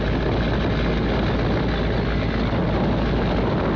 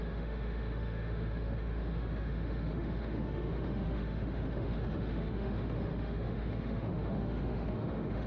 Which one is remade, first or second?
second